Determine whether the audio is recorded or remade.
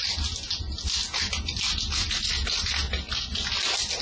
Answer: recorded